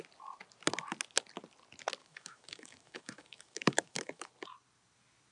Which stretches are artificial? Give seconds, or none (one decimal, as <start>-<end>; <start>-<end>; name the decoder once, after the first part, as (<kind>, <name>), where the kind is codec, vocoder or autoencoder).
2.0-4.3 (autoencoder, DAC-VAE)